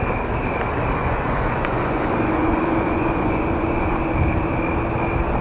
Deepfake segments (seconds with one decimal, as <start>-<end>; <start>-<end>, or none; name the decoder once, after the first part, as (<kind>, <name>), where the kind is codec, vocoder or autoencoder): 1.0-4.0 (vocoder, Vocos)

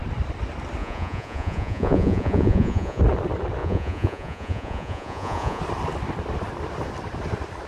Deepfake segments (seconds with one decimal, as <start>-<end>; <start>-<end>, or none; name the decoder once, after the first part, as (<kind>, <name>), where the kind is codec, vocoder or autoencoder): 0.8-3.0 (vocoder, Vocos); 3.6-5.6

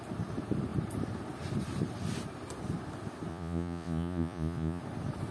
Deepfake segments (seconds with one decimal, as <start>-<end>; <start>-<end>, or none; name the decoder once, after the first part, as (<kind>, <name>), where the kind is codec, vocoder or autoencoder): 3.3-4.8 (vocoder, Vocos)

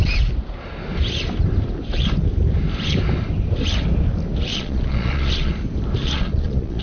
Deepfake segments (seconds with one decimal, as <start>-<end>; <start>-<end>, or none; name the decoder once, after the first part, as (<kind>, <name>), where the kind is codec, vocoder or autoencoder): 4.5-5.5 (vocoder, Vocos); 6.0-6.8